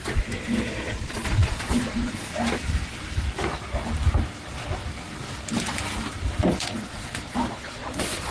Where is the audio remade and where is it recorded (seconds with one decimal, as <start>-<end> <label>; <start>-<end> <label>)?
0.0-2.3 remade; 2.3-6.5 recorded; 6.5-8.3 remade

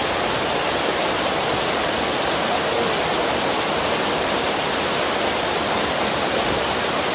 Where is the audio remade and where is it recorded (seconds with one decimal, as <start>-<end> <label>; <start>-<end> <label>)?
0.0-7.1 recorded

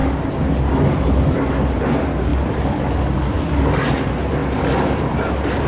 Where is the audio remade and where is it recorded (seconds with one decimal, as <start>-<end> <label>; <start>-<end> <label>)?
0.0-0.9 recorded; 0.9-2.3 remade; 2.3-3.9 recorded; 3.9-4.4 remade; 4.4-5.3 recorded; 5.3-5.7 remade

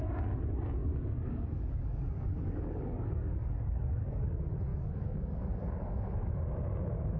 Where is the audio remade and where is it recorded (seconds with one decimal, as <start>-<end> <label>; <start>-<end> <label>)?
0.0-0.8 recorded; 0.8-4.3 remade; 4.3-4.7 recorded; 4.7-6.3 remade; 6.3-7.2 recorded

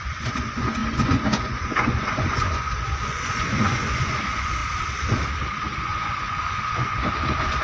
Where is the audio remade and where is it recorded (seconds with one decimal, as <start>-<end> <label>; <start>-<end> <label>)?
0.0-4.6 remade; 4.6-5.8 recorded; 5.8-7.6 remade

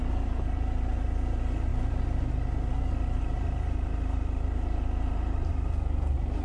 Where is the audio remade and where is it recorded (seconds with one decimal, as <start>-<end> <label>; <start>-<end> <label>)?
0.0-6.4 recorded

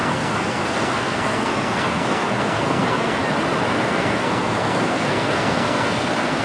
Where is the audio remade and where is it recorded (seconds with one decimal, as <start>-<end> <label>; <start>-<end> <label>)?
0.0-3.2 remade; 3.2-3.7 recorded; 3.7-6.4 remade

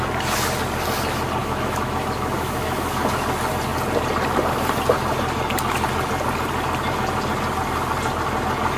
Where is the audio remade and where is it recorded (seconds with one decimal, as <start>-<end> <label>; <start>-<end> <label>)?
0.0-1.4 recorded; 1.4-3.1 remade; 3.1-8.8 recorded